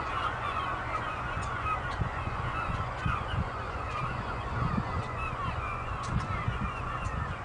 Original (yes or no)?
no